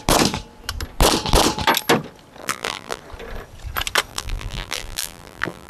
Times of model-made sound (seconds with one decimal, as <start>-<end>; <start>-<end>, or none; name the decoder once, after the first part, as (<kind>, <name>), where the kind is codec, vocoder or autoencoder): 2.4-3.0 (vocoder, BigVGAN v2); 4.1-5.7